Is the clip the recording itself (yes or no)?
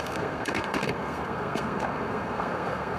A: no